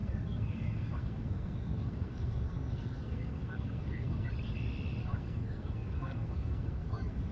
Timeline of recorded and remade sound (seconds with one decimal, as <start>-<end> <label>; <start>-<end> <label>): 0.0-4.3 remade; 4.3-5.0 recorded; 5.0-7.3 remade